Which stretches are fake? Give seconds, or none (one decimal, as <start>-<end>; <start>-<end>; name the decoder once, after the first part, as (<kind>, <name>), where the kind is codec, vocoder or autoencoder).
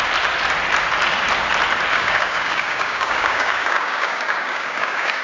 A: 1.9-5.2 (codec, DAC)